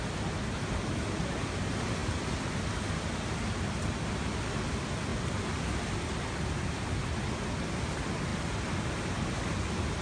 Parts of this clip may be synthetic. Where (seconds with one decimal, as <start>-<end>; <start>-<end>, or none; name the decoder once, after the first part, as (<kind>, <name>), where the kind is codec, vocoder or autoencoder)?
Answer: none